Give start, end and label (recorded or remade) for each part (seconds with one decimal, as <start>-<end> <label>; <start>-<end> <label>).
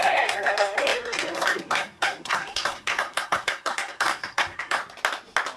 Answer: 0.0-4.8 remade; 4.8-5.6 recorded